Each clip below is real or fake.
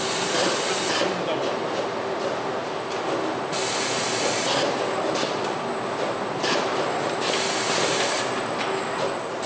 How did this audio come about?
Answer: real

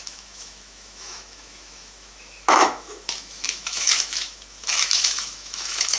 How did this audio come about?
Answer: fake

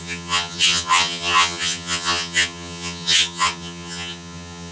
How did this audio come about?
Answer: fake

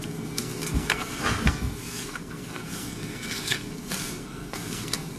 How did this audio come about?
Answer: fake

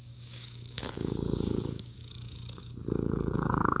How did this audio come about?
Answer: fake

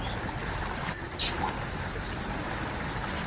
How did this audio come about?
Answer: real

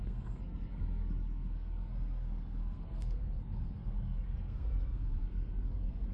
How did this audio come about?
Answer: fake